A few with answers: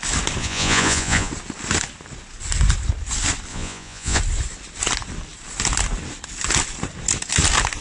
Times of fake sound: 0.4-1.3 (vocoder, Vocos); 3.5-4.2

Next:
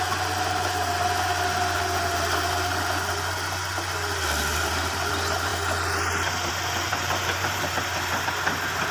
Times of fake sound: 4.5-5.1 (vocoder, BigVGAN v2); 6.9-7.6

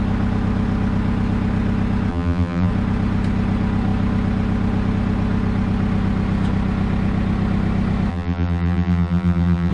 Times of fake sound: 2.1-2.7 (vocoder, BigVGAN v2); 8.1-9.7